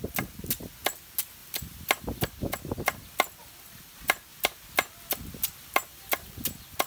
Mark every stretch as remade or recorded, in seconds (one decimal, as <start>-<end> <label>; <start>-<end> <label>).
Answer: 0.0-1.4 recorded; 1.4-2.4 remade; 2.4-6.9 recorded